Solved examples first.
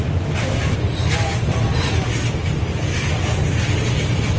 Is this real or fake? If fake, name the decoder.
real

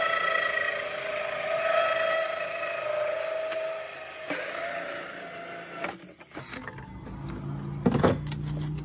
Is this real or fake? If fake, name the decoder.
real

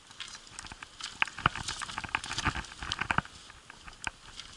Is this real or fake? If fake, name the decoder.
real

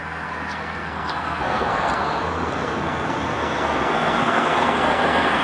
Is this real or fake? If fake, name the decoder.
fake, codec, SNAC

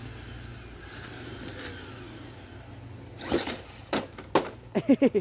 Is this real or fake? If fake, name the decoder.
real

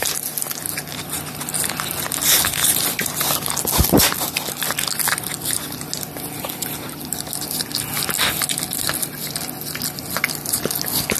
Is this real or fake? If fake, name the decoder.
real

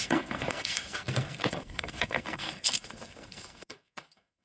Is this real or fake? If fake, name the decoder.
fake, codec, SNAC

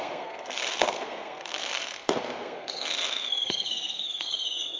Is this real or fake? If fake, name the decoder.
fake, codec, SNAC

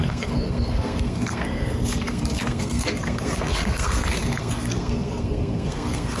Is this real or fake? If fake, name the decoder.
fake, codec, SNAC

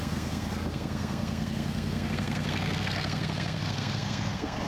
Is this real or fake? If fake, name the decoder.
fake, codec, SNAC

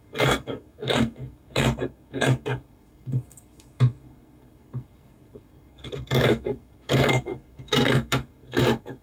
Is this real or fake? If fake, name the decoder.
fake, codec, SNAC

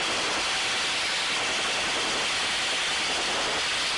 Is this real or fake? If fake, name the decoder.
real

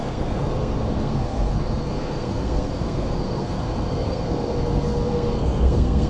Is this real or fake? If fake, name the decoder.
fake, codec, SNAC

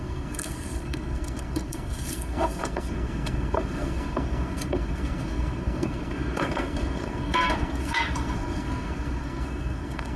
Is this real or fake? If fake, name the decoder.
fake, codec, SNAC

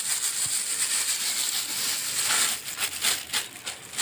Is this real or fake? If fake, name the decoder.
real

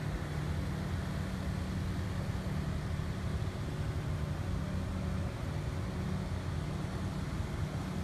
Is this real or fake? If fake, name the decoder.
real